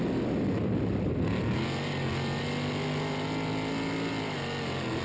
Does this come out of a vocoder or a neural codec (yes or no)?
no